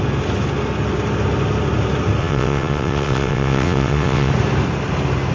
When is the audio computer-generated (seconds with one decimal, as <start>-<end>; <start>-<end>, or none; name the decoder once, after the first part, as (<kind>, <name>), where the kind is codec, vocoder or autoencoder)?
2.2-4.3 (vocoder, WaveNeXt)